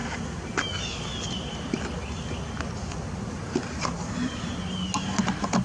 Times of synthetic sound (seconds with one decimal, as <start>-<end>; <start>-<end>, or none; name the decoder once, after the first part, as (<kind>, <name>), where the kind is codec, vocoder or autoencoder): none